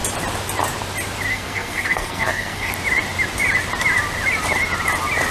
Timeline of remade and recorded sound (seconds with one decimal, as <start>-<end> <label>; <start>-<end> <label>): 0.0-1.3 recorded; 1.3-2.7 remade; 2.7-5.3 recorded